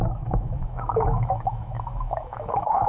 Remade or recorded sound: remade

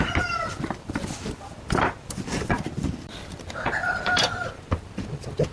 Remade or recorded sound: remade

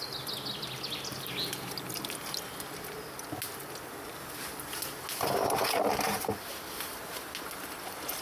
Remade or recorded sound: recorded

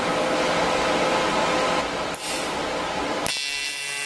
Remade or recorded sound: recorded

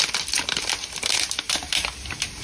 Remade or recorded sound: recorded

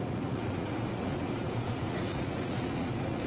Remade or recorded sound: remade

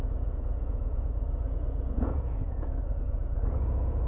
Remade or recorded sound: remade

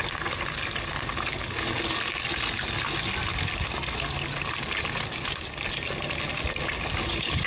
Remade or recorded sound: recorded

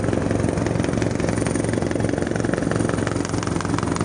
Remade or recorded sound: recorded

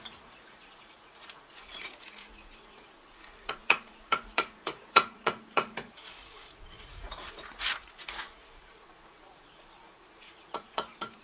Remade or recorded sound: remade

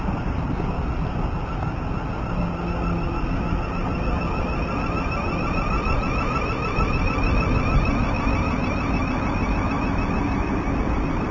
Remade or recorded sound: recorded